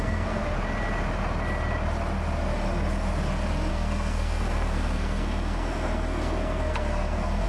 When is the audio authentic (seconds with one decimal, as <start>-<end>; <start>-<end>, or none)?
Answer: 0.4-3.7